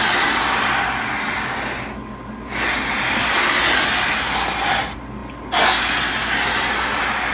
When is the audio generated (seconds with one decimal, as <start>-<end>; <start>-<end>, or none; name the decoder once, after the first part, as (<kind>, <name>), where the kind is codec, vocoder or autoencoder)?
none

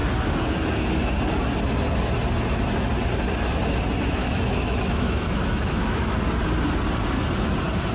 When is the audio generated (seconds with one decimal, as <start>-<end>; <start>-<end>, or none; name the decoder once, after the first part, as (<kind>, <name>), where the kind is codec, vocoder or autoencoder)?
4.2-6.2 (autoencoder, DAC-VAE)

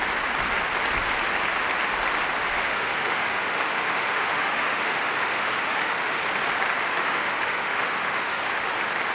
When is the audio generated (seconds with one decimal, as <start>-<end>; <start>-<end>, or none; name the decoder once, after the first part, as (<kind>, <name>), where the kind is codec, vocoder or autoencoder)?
2.4-6.2 (autoencoder, DAC-VAE); 6.9-8.6

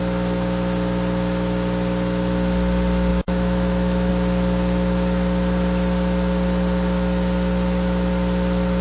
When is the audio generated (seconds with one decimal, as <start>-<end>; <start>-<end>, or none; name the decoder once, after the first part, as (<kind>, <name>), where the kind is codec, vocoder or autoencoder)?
3.1-4.1 (autoencoder, DAC-VAE)

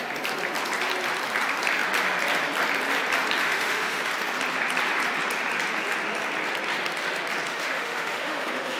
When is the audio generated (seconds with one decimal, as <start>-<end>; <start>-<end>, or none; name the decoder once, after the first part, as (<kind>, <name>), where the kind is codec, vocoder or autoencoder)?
3.4-4.1 (autoencoder, DAC-VAE); 7.5-8.8

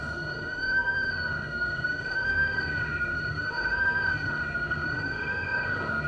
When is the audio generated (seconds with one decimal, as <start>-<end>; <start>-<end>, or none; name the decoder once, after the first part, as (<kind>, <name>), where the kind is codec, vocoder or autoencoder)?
0.0-6.1 (autoencoder, DAC-VAE)